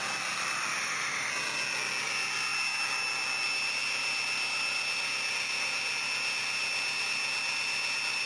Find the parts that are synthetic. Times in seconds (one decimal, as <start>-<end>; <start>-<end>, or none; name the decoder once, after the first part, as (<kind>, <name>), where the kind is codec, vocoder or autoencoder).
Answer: 0.8-1.3 (autoencoder, DAC-VAE)